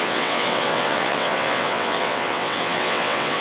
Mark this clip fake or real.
fake